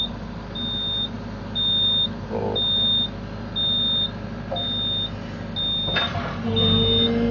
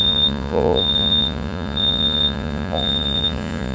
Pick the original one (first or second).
first